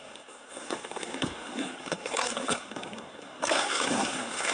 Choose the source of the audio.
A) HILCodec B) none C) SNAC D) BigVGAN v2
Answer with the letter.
C